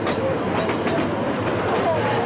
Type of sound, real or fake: real